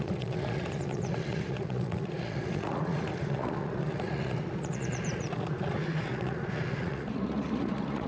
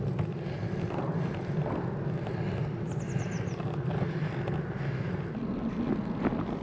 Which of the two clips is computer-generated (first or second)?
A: first